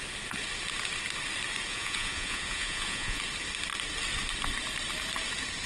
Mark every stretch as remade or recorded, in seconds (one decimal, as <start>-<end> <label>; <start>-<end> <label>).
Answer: 0.0-1.7 recorded; 1.7-3.2 remade; 3.2-5.7 recorded